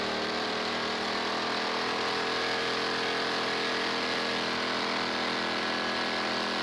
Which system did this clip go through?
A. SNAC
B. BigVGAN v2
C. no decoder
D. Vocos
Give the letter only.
C